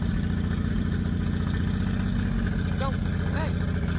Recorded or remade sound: recorded